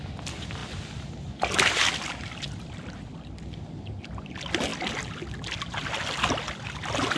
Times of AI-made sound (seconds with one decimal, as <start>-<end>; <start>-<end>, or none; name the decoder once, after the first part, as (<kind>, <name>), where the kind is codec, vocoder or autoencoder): none